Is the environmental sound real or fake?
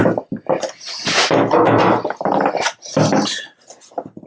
real